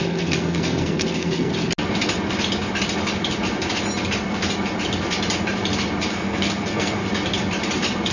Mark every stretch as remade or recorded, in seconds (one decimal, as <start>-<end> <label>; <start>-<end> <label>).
0.0-1.5 remade; 1.5-6.1 recorded; 6.1-7.0 remade; 7.0-8.1 recorded

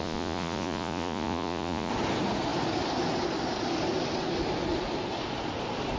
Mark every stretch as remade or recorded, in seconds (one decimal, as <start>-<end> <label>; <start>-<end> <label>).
0.0-1.9 remade; 1.9-6.0 recorded